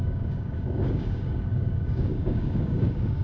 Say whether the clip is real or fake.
fake